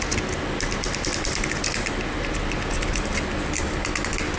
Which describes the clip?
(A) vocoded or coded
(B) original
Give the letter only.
B